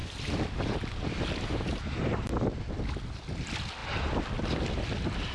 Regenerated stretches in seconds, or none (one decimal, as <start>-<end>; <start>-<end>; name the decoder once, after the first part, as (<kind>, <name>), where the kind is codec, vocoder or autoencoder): none